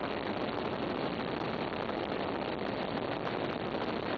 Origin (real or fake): real